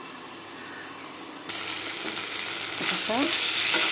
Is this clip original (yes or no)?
yes